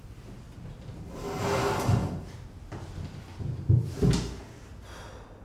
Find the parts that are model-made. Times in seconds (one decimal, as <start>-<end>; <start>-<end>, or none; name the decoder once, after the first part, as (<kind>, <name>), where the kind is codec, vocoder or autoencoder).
none